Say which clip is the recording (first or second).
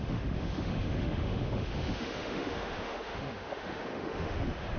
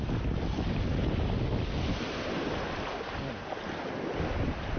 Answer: second